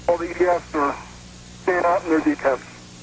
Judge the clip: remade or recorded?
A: recorded